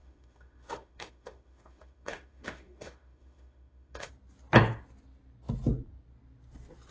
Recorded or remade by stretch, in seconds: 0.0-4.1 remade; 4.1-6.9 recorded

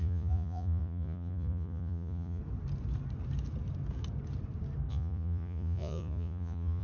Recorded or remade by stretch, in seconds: 0.0-2.4 remade; 2.4-4.9 recorded; 4.9-6.8 remade

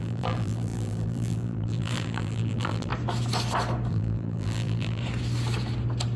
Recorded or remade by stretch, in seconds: 0.0-2.9 remade; 2.9-3.9 recorded; 3.9-5.0 remade; 5.0-6.2 recorded

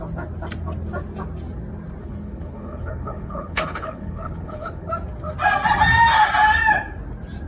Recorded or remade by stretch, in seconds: 0.0-2.0 recorded; 2.0-4.9 remade; 4.9-7.5 recorded

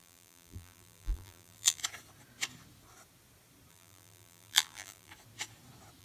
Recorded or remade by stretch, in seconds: 0.0-1.8 remade; 1.8-3.7 recorded; 3.7-5.1 remade; 5.1-6.0 recorded

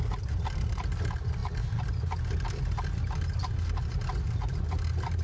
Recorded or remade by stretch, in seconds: 0.0-5.2 recorded